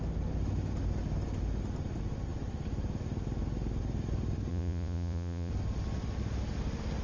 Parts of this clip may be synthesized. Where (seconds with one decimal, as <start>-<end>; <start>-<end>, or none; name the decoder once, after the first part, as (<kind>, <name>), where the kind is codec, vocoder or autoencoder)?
4.5-5.5 (vocoder, Vocos)